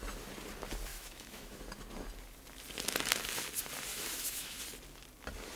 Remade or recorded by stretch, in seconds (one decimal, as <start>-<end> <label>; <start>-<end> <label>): 0.0-0.9 recorded; 0.9-1.6 remade; 1.6-3.9 recorded; 3.9-4.6 remade; 4.6-5.6 recorded